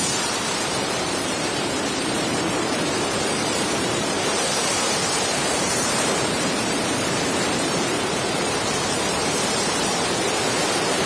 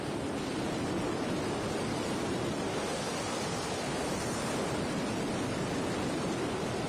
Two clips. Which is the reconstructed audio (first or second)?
first